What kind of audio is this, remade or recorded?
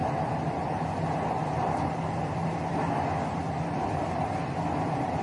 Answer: recorded